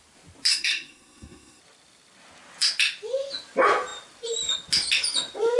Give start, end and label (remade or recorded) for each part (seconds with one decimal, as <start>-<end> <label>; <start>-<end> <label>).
0.0-0.5 recorded; 0.5-1.6 remade; 1.6-5.6 recorded

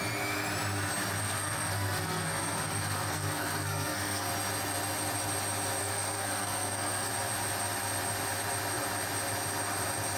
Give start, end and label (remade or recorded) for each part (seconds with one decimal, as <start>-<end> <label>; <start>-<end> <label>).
0.0-1.2 recorded; 1.2-4.3 remade; 4.3-5.8 recorded; 5.8-7.1 remade; 7.1-10.2 recorded

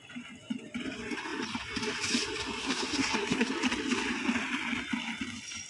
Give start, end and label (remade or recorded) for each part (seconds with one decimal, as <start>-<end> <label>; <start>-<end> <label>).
0.0-2.6 recorded; 2.6-3.5 remade; 3.5-5.7 recorded

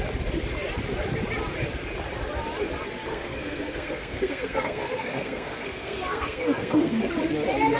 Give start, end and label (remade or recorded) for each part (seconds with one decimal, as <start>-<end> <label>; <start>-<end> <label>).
0.0-3.1 recorded; 3.1-7.1 remade; 7.1-7.8 recorded

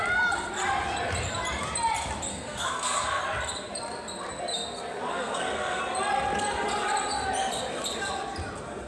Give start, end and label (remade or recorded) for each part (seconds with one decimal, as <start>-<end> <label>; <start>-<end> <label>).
0.0-2.3 recorded; 2.3-3.2 remade; 3.2-5.1 recorded; 5.1-5.8 remade; 5.8-8.9 recorded